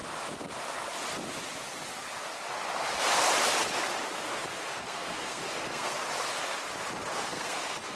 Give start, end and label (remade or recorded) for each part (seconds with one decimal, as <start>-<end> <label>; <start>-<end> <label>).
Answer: 0.0-4.5 recorded; 4.5-6.0 remade; 6.0-7.1 recorded; 7.1-8.0 remade